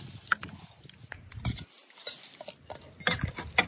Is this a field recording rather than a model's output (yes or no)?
yes